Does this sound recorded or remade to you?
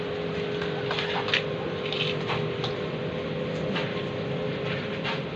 recorded